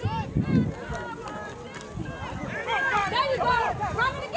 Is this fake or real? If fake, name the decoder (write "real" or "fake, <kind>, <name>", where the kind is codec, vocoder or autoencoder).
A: real